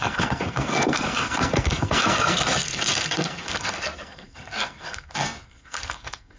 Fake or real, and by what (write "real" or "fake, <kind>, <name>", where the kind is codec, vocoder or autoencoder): fake, codec, SNAC